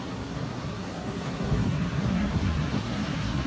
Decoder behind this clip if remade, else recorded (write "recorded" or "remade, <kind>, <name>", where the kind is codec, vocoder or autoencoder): remade, codec, SNAC